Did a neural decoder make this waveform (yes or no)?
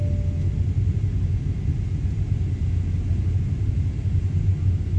no